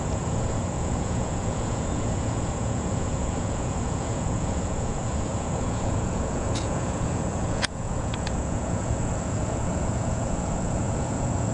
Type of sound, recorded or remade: remade